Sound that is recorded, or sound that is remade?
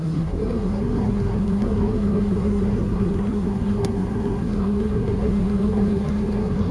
remade